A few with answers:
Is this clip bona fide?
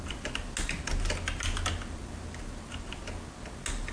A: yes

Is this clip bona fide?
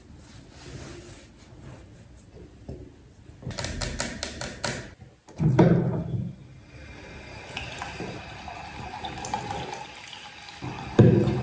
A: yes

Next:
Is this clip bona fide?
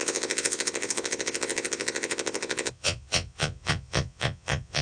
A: no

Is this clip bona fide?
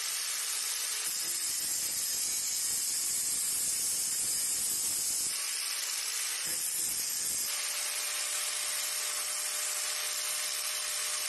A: yes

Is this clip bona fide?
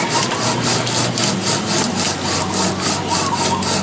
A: yes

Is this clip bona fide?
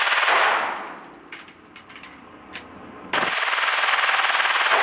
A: yes